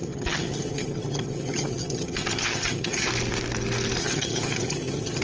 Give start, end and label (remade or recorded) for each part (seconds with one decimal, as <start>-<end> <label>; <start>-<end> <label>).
0.0-3.1 remade; 3.1-4.0 recorded; 4.0-5.2 remade